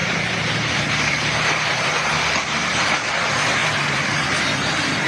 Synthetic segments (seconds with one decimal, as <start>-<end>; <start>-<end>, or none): 0.0-3.1; 3.6-4.4